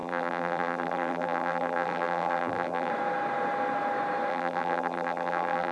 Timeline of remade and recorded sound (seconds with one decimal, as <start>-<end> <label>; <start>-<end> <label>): 0.0-2.9 remade; 2.9-4.3 recorded; 4.3-5.7 remade